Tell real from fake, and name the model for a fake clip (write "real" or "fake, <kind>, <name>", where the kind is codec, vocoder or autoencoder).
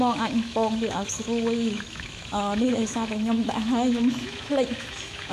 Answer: fake, autoencoder, DAC-VAE